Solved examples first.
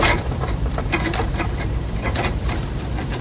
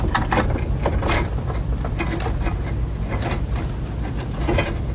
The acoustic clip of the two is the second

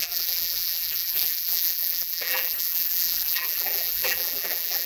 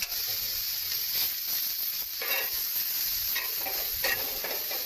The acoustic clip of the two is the second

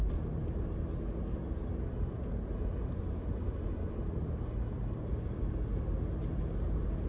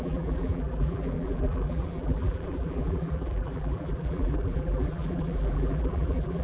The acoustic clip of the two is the first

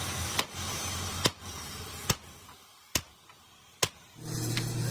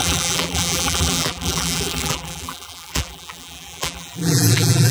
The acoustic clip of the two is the first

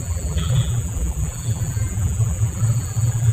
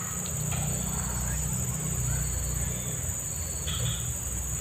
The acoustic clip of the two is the second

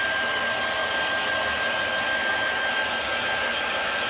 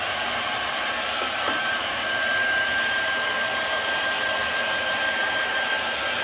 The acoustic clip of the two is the first